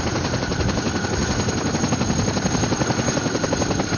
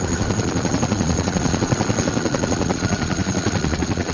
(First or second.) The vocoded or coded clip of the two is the second